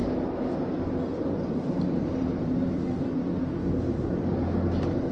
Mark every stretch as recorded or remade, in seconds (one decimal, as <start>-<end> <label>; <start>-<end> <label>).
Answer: 0.0-1.1 recorded; 1.1-3.1 remade; 3.1-5.1 recorded

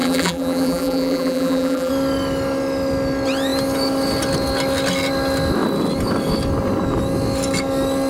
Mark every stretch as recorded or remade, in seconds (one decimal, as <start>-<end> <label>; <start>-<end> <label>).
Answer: 0.0-1.9 remade; 1.9-8.1 recorded

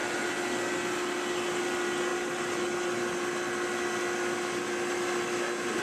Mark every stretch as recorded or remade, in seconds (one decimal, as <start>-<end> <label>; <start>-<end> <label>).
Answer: 0.0-5.8 recorded

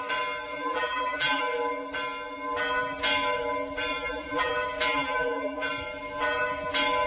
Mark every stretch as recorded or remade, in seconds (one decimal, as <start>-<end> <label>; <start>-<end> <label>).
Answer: 0.0-0.5 recorded; 0.5-1.4 remade; 1.4-3.9 recorded; 3.9-4.5 remade; 4.5-4.9 recorded; 4.9-5.7 remade; 5.7-7.1 recorded

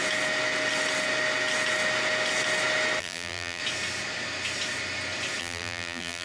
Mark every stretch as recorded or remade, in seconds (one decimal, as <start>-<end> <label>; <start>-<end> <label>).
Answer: 0.0-3.0 recorded; 3.0-3.6 remade; 3.6-5.4 recorded; 5.4-6.2 remade